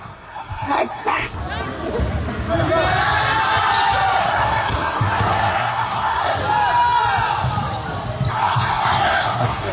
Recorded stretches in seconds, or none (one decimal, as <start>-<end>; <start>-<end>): 1.4-4.2; 6.4-8.3